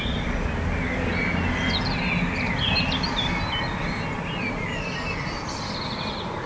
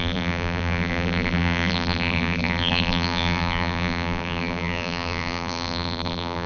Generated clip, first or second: second